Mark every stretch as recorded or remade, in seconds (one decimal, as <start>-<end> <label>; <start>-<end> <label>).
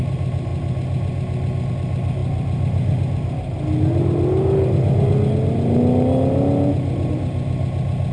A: 0.0-8.1 recorded